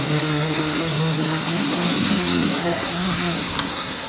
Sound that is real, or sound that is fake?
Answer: fake